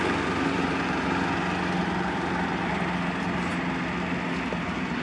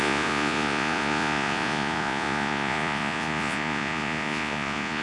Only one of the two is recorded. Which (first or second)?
first